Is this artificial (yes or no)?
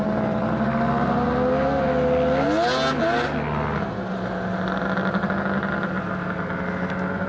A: no